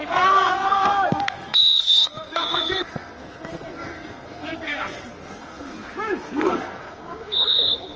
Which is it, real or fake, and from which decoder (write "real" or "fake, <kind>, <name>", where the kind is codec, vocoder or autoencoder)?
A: fake, codec, SNAC